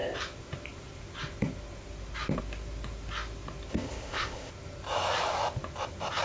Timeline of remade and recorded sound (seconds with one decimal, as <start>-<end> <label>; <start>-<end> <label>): 0.0-3.7 recorded; 3.7-4.5 remade; 4.5-6.2 recorded